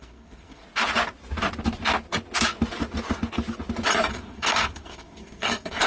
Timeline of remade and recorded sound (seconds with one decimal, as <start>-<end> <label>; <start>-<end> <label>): 0.0-0.6 remade; 0.6-4.1 recorded; 4.1-5.9 remade